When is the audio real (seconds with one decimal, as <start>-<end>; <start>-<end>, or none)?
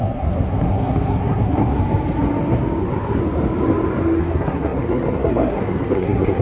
1.8-2.8; 3.2-4.2